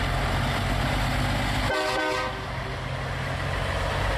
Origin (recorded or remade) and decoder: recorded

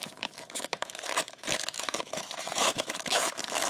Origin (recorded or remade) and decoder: remade, autoencoder, DAC-VAE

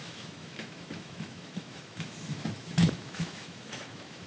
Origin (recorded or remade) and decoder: remade, autoencoder, DAC-VAE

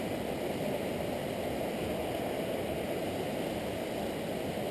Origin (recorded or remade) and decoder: recorded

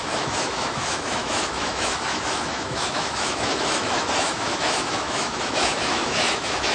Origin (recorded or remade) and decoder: remade, autoencoder, DAC-VAE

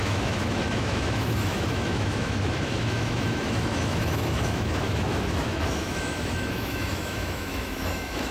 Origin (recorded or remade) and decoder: remade, autoencoder, DAC-VAE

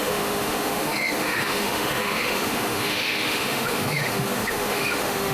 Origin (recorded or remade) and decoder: remade, autoencoder, DAC-VAE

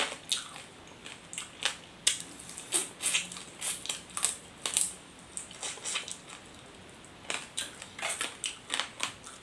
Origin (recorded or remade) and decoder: recorded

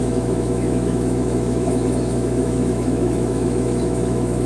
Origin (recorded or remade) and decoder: remade, autoencoder, DAC-VAE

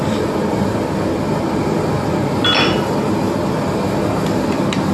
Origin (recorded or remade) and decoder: recorded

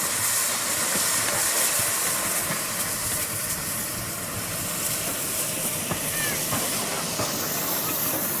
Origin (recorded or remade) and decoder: recorded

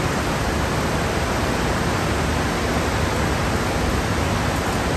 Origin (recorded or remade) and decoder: recorded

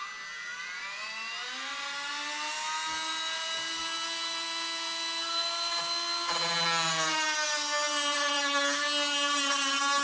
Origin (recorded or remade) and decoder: recorded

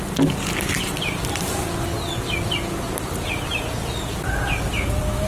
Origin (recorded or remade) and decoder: recorded